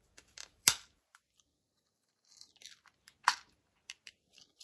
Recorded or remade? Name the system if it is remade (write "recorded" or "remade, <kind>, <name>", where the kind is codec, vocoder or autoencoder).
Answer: remade, vocoder, BigVGAN v2